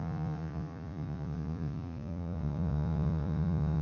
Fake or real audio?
fake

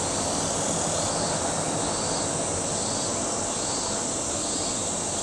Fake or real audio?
real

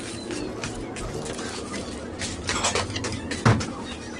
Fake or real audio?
real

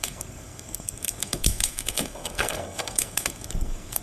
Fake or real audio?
fake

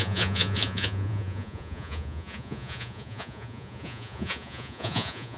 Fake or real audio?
fake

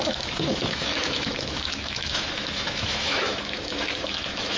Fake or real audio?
fake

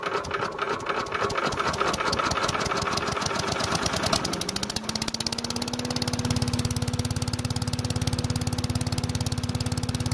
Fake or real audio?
real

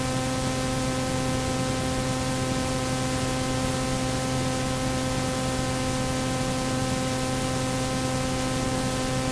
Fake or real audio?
real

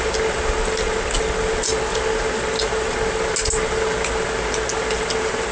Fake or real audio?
real